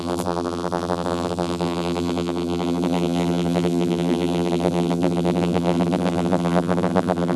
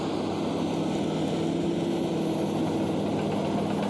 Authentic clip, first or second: second